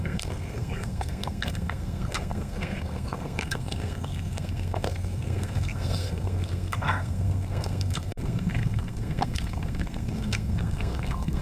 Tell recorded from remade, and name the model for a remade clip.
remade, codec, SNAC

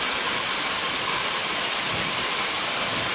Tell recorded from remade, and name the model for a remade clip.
recorded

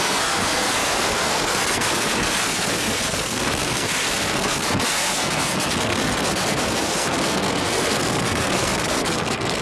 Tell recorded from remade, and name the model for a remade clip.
remade, codec, SNAC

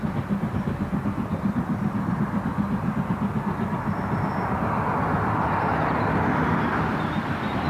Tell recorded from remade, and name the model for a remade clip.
recorded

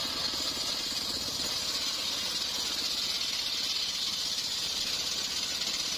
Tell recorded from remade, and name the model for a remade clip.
recorded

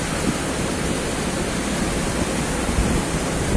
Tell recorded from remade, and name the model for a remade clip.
recorded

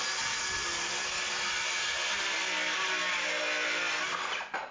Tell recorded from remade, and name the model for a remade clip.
recorded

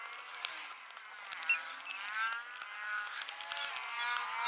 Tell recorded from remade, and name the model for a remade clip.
recorded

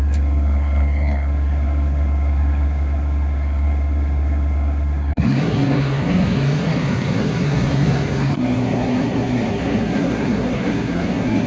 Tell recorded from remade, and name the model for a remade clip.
remade, codec, SNAC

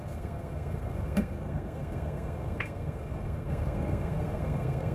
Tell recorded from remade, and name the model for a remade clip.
remade, codec, SNAC